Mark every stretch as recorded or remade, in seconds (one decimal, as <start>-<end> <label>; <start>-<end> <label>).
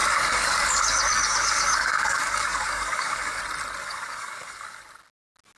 0.0-3.4 remade; 3.4-3.8 recorded; 3.8-4.8 remade; 4.8-5.6 recorded